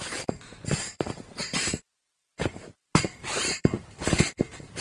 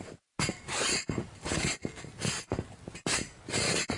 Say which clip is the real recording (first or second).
second